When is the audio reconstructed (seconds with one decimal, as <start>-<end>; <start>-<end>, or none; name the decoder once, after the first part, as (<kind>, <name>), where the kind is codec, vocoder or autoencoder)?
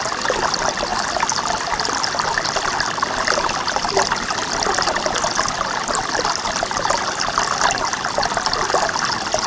none